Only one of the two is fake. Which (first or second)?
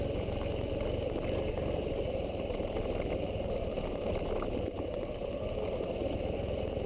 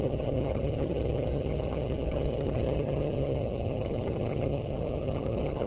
second